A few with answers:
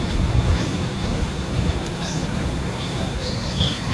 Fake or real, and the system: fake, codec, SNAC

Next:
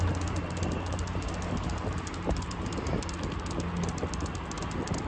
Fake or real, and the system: real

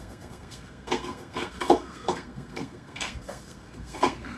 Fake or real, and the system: fake, codec, SNAC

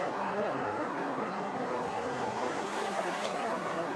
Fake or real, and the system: fake, codec, SNAC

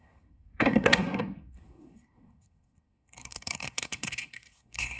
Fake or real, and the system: fake, codec, SNAC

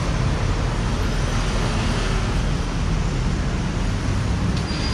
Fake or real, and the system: real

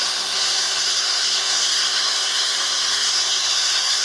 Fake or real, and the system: fake, codec, SNAC